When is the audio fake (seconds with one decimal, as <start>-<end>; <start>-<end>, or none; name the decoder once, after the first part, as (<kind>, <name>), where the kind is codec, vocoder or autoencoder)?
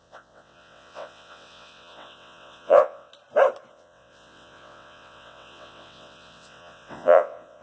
0.0-3.1 (vocoder, WaveNeXt); 3.7-7.6